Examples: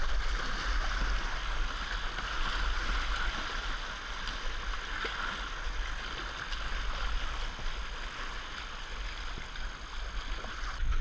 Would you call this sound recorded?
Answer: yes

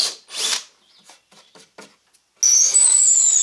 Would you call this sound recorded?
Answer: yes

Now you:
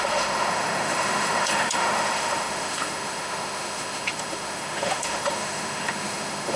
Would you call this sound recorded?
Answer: no